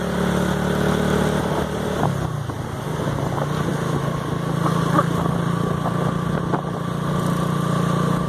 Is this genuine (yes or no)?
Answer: yes